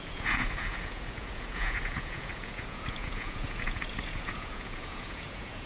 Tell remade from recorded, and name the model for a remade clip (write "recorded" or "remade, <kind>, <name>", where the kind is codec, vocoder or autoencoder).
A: remade, vocoder, Vocos